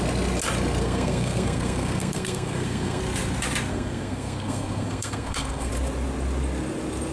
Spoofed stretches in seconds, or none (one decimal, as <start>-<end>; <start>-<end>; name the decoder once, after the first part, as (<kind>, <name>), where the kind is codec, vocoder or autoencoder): 0.8-3.0 (codec, SNAC); 3.7-5.7